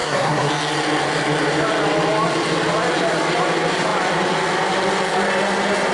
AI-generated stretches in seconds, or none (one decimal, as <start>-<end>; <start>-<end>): 0.0-0.5